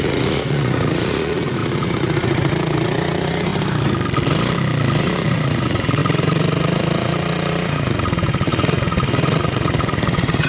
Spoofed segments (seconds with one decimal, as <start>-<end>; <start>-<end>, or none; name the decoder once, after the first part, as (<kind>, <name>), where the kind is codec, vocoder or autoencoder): 0.0-3.5 (vocoder, Vocos); 5.0-10.5